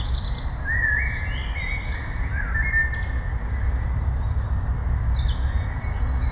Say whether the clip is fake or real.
real